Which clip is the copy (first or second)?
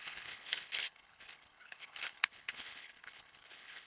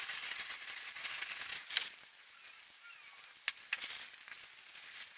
first